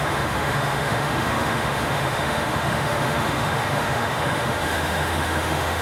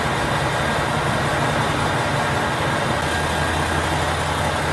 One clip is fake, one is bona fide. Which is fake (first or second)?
first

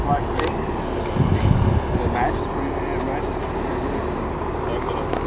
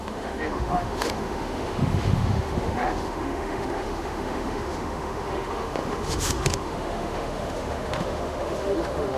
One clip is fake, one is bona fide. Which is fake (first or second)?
second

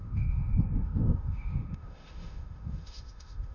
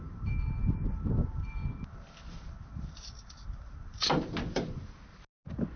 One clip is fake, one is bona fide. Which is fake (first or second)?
first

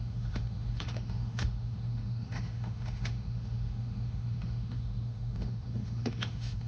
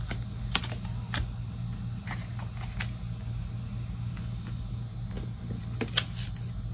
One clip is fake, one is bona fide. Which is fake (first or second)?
first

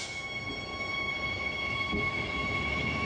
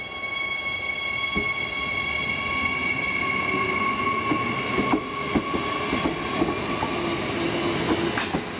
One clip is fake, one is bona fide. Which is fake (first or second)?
first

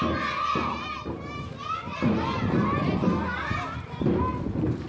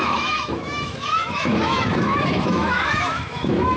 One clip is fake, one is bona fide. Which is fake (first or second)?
second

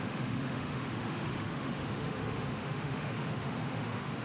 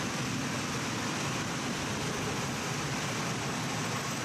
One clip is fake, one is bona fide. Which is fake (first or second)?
first